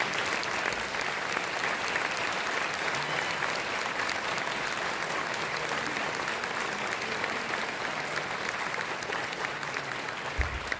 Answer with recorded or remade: recorded